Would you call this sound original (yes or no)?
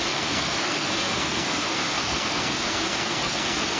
no